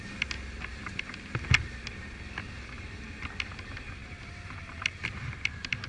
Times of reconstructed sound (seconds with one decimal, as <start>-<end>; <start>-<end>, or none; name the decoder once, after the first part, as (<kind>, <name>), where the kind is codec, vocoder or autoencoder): none